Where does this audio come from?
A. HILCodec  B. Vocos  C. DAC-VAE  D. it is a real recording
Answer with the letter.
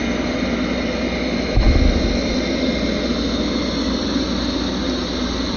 D